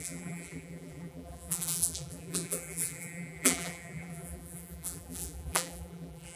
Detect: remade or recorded remade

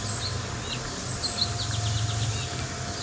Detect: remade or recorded recorded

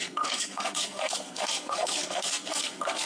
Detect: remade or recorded remade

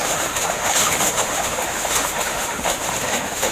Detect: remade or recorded remade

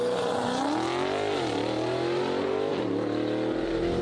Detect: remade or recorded recorded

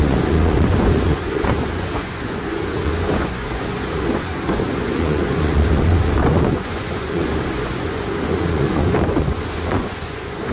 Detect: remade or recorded remade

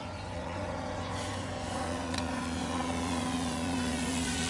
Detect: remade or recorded remade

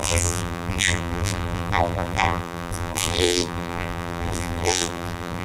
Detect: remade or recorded remade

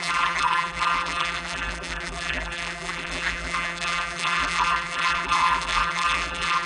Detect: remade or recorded remade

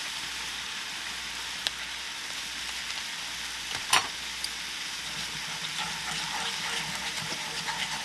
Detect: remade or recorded remade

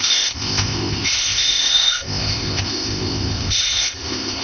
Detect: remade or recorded remade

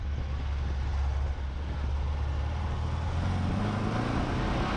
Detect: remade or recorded recorded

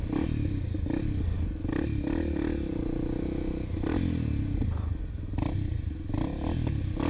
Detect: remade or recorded recorded